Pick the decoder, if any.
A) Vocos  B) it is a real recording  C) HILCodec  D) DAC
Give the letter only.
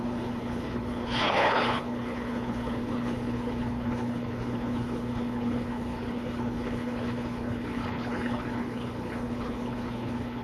C